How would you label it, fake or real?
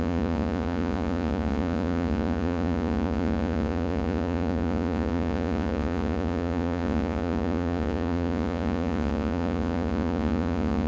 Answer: fake